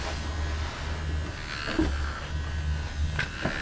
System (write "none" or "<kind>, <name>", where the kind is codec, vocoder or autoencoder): none